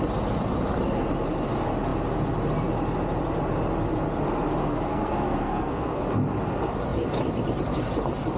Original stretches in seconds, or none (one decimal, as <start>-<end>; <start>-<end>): 0.0-4.6; 6.0-8.4